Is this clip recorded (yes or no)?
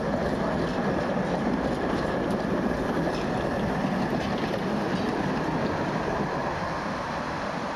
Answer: yes